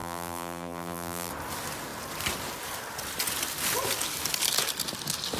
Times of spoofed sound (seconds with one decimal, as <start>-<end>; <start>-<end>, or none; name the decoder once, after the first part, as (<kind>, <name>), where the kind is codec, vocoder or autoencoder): 0.0-1.3 (vocoder, BigVGAN v2)